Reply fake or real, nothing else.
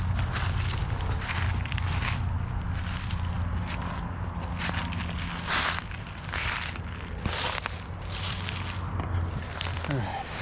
real